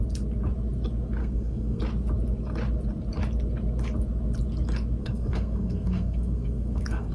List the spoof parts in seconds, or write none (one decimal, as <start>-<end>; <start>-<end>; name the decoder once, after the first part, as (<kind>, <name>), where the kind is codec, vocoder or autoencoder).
1.2-1.8 (codec, SNAC); 5.0-7.1